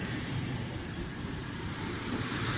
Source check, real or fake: fake